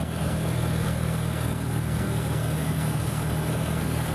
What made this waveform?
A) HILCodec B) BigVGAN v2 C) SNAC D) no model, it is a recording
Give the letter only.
C